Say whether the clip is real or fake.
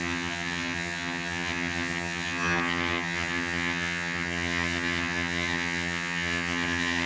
fake